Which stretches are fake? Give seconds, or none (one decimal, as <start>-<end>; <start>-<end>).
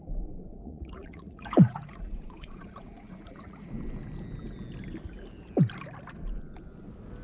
0.5-3.7